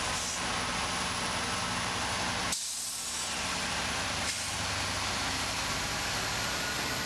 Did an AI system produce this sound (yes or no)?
no